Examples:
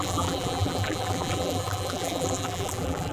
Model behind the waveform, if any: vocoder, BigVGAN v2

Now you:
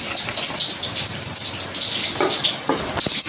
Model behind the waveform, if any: none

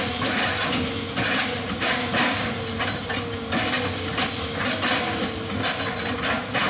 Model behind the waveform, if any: none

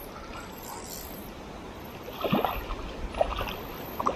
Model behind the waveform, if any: none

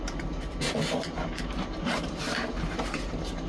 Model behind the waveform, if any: vocoder, BigVGAN v2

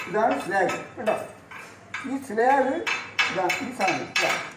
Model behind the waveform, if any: vocoder, BigVGAN v2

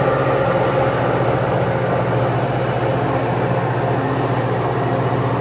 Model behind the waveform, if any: none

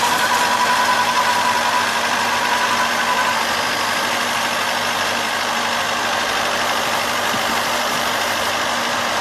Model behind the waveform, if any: vocoder, BigVGAN v2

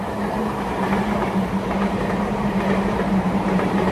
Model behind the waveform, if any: vocoder, BigVGAN v2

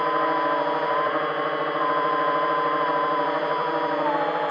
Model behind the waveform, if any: vocoder, BigVGAN v2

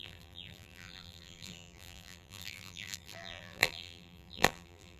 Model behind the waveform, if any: vocoder, BigVGAN v2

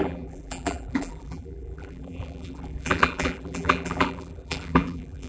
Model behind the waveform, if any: vocoder, BigVGAN v2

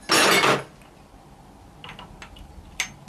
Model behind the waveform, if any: none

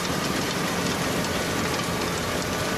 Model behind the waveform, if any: none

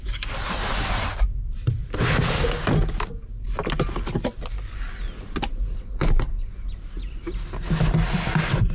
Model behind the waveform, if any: none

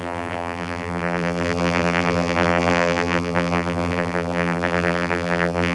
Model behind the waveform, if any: vocoder, BigVGAN v2